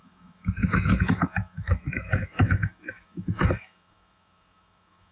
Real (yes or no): no